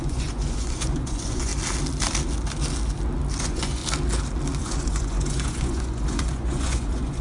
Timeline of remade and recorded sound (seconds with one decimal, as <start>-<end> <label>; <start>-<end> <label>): 0.0-1.5 remade; 1.5-3.4 recorded; 3.4-3.8 remade; 3.8-4.6 recorded; 4.6-7.2 remade